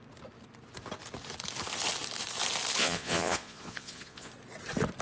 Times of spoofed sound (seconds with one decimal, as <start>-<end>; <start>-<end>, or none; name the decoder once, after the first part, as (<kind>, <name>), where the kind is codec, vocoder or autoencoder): 2.8-4.3 (vocoder, Vocos)